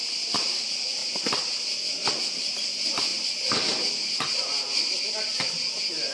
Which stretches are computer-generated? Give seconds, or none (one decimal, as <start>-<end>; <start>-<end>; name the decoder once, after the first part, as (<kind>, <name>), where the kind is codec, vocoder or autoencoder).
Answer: none